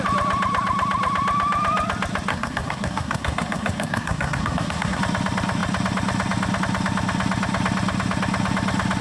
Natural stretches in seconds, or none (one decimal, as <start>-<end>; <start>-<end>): 0.0-2.3; 5.0-9.0